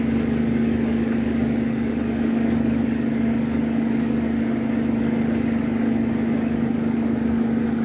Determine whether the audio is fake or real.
fake